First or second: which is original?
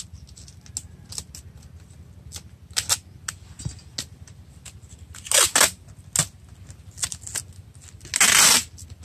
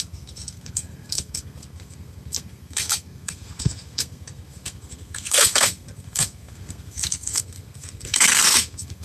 first